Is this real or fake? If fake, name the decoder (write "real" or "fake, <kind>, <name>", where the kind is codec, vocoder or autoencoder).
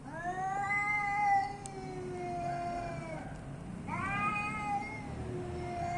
real